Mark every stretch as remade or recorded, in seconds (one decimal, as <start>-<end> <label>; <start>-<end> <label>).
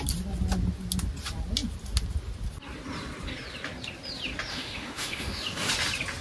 0.0-4.5 recorded; 4.5-5.7 remade; 5.7-6.2 recorded